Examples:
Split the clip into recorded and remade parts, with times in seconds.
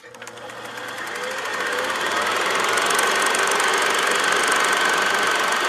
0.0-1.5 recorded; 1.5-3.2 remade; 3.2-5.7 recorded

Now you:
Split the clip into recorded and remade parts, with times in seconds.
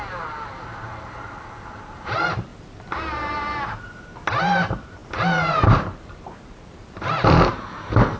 0.0-2.5 remade; 2.5-4.4 recorded; 4.4-8.2 remade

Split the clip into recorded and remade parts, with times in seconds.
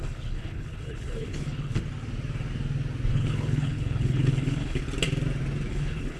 0.0-1.8 remade; 1.8-3.1 recorded; 3.1-4.8 remade; 4.8-5.7 recorded; 5.7-6.2 remade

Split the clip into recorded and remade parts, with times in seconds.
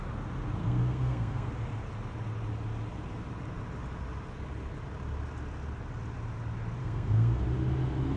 0.0-0.6 recorded; 0.6-1.5 remade; 1.5-6.8 recorded; 6.8-7.4 remade; 7.4-8.2 recorded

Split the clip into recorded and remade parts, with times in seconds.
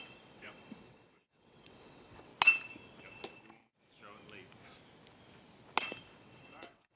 0.0-2.3 remade; 2.3-6.2 recorded; 6.2-7.0 remade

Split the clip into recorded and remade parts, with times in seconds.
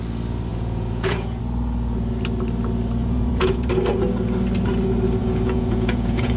0.0-0.5 recorded; 0.5-1.4 remade; 1.4-3.0 recorded; 3.0-3.7 remade; 3.7-5.2 recorded; 5.2-6.4 remade